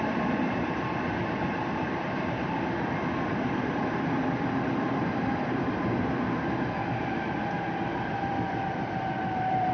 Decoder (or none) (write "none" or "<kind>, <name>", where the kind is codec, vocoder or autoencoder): vocoder, BigVGAN v2